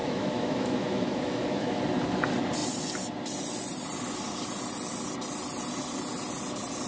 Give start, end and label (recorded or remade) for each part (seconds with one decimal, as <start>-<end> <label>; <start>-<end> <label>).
0.0-1.8 remade; 1.8-6.9 recorded